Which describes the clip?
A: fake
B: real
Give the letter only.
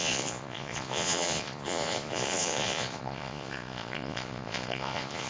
A